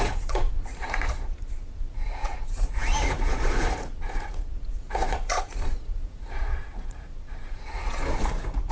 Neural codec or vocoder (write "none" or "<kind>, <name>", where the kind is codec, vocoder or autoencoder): vocoder, Vocos